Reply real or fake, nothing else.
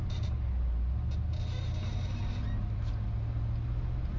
real